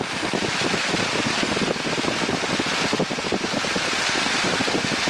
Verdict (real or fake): real